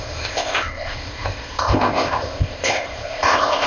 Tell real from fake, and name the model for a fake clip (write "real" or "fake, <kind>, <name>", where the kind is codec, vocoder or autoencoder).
fake, codec, ZipCodec